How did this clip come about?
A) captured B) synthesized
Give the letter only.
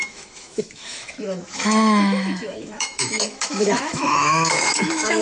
B